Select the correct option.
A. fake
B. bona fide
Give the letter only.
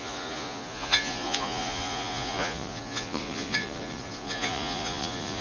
A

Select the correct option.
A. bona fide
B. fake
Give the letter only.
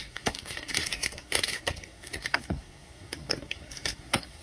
B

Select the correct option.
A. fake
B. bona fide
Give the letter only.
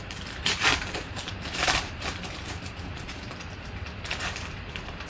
A